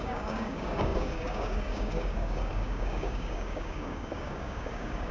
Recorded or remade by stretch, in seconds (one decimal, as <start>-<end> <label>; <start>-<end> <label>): 0.0-5.1 remade